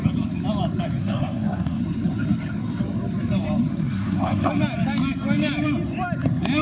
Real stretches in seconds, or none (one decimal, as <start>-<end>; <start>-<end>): 0.0-1.0; 1.8-3.7; 4.5-6.6